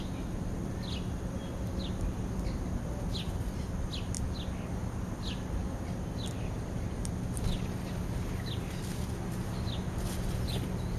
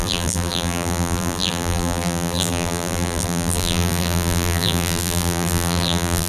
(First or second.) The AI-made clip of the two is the second